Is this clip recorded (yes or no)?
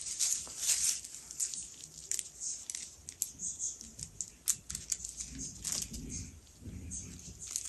yes